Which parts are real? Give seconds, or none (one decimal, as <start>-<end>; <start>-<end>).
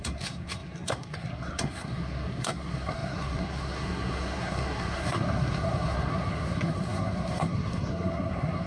none